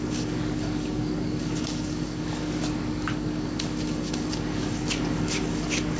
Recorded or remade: remade